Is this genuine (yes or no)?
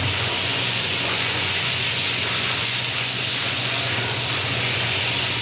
no